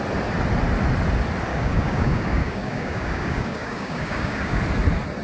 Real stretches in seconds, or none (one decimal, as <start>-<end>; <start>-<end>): 0.0-1.5; 4.6-5.2